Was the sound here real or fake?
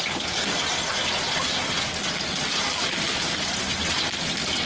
real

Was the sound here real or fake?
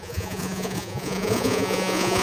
fake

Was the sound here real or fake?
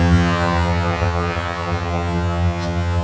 fake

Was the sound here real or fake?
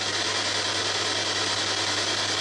real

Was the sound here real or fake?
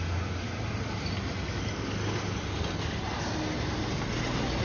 real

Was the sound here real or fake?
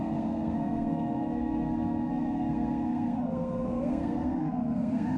fake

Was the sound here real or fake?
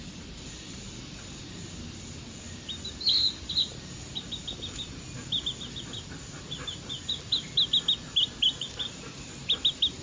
real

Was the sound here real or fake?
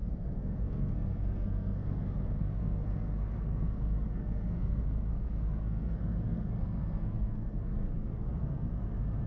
fake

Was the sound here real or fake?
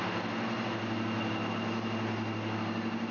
real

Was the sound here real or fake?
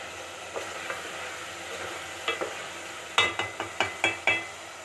real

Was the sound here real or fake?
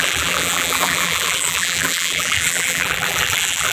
fake